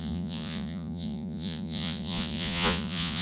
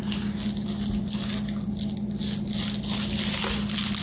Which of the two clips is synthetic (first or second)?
first